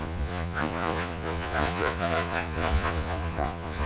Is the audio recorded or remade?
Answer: remade